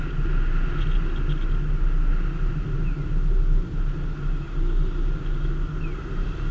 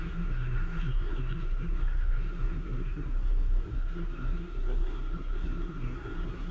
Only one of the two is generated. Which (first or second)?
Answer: second